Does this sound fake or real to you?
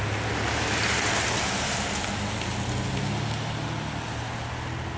real